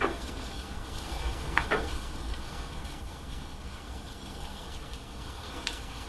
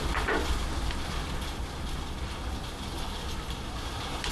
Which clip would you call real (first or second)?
second